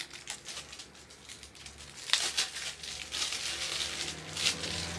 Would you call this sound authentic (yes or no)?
yes